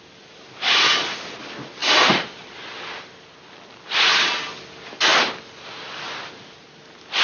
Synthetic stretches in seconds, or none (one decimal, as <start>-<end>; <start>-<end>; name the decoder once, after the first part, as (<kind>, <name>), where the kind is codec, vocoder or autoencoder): 1.8-2.7 (vocoder, BigVGAN v2)